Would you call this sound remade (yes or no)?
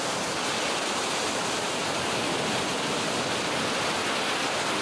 no